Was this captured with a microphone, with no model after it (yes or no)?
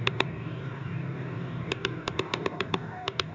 no